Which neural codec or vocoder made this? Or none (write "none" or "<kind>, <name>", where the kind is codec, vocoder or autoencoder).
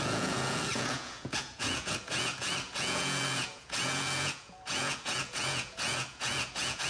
vocoder, Vocos